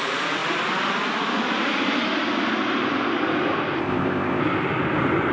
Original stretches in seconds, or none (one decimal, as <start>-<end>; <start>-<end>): 0.0-3.8; 4.4-5.3